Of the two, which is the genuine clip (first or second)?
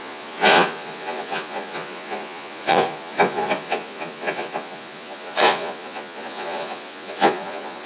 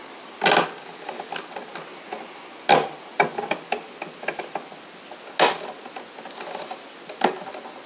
second